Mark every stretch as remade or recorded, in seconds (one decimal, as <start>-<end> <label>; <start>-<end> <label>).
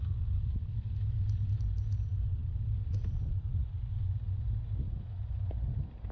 0.0-6.1 recorded